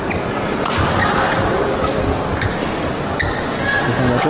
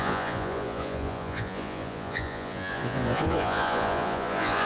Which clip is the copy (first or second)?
second